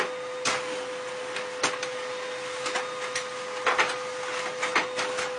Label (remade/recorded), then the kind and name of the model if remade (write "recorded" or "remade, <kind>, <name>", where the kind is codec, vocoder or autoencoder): recorded